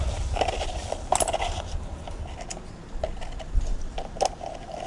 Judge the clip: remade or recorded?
recorded